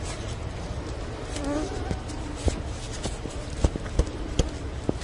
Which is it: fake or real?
real